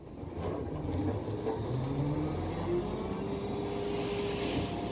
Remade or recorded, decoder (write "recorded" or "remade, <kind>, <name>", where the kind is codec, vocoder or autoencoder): recorded